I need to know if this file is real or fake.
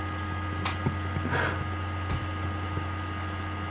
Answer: real